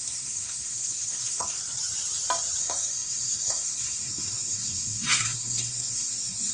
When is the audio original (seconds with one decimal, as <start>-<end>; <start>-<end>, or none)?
1.6-2.6